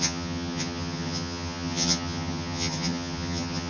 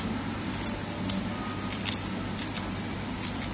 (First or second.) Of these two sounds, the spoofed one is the first